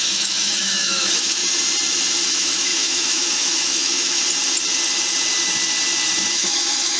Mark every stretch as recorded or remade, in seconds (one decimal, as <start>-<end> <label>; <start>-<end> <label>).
0.0-1.4 remade; 1.4-2.3 recorded; 2.3-4.2 remade; 4.2-6.3 recorded; 6.3-7.0 remade